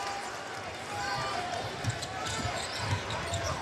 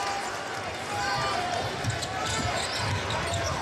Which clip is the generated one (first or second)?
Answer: first